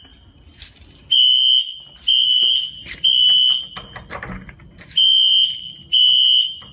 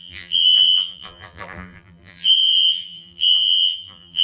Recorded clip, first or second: first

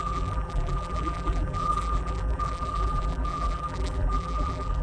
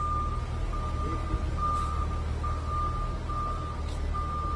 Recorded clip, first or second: second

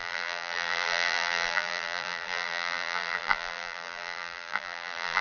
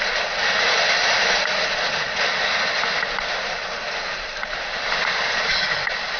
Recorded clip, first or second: second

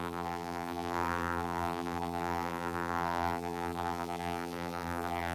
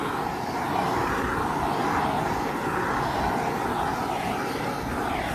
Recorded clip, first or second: second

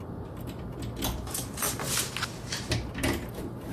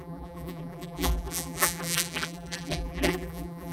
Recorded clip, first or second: first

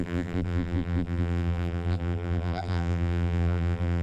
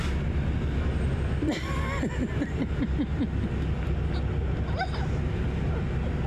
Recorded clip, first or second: second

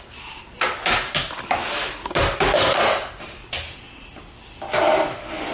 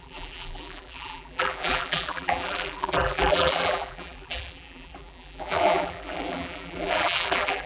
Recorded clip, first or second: first